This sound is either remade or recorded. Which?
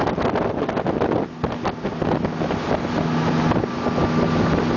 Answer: recorded